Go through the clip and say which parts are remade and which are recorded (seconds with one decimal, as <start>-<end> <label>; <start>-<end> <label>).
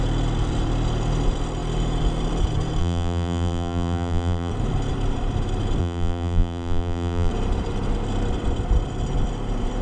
0.0-2.8 recorded; 2.8-4.5 remade; 4.5-5.8 recorded; 5.8-7.3 remade; 7.3-9.8 recorded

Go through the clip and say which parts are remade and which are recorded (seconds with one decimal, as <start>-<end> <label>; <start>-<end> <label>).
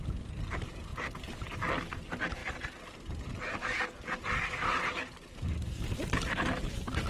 0.0-7.1 recorded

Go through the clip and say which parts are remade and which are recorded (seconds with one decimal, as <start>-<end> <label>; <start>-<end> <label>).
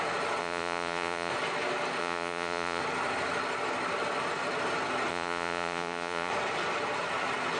0.0-0.4 recorded; 0.4-1.3 remade; 1.3-2.0 recorded; 2.0-2.8 remade; 2.8-5.1 recorded; 5.1-6.3 remade; 6.3-7.6 recorded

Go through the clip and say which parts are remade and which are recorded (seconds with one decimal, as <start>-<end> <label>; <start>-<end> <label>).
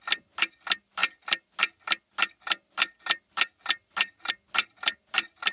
0.0-5.5 recorded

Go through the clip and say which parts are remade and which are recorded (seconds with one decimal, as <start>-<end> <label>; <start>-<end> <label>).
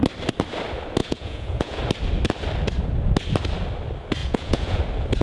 0.0-1.0 recorded; 1.0-1.8 remade; 1.8-4.2 recorded; 4.2-4.8 remade; 4.8-5.2 recorded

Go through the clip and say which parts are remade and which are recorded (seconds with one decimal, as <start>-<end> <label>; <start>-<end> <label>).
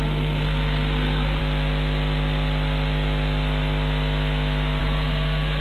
0.0-1.4 remade; 1.4-4.8 recorded; 4.8-5.6 remade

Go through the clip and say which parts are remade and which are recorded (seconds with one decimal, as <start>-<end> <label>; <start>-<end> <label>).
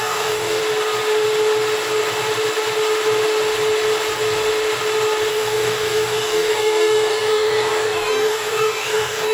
0.0-0.6 remade; 0.6-5.3 recorded; 5.3-9.3 remade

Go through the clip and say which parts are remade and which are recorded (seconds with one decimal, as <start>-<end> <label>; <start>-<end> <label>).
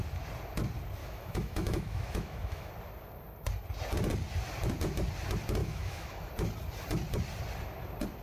0.0-1.0 recorded; 1.0-2.7 remade; 2.7-5.6 recorded; 5.6-6.3 remade; 6.3-8.2 recorded